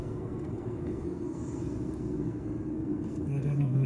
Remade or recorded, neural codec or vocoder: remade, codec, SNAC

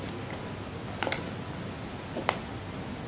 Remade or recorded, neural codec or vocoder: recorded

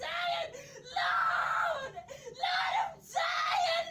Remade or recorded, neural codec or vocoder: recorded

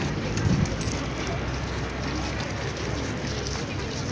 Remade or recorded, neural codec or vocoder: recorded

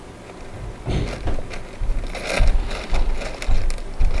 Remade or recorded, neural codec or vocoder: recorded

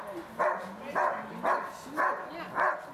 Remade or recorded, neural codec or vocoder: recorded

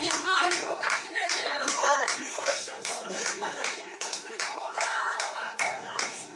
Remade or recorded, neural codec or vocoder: remade, codec, SNAC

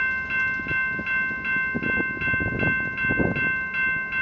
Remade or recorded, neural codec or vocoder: recorded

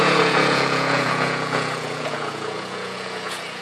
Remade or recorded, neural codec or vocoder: remade, vocoder, Vocos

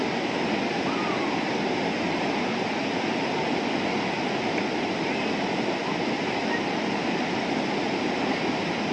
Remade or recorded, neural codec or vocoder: recorded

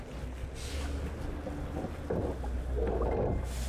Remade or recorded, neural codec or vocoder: recorded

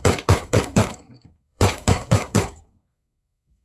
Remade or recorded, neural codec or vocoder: remade, codec, SNAC